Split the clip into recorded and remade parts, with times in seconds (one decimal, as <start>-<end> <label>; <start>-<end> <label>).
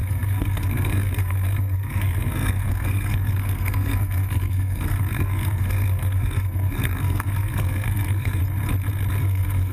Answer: 0.0-8.4 remade; 8.4-9.2 recorded; 9.2-9.7 remade